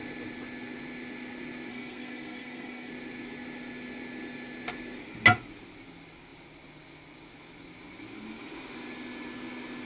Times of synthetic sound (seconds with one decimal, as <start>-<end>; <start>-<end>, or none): 1.7-2.9